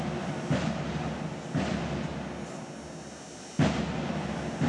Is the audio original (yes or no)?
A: yes